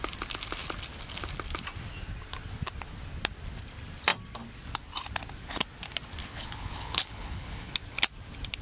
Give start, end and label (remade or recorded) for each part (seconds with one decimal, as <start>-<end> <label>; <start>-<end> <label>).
0.0-6.2 recorded; 6.2-7.7 remade; 7.7-8.6 recorded